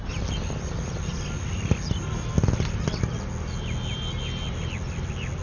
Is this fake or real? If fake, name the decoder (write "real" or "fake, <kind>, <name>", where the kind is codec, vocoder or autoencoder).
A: real